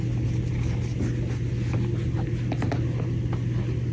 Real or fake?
real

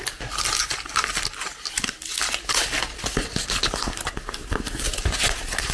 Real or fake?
real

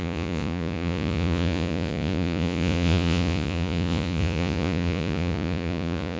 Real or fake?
fake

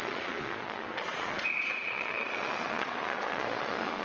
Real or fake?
fake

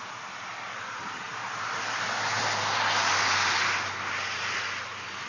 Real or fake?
real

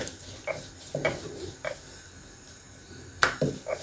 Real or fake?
real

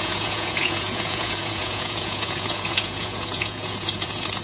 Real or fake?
fake